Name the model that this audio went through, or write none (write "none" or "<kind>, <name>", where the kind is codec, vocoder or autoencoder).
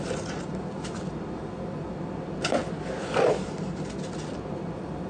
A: none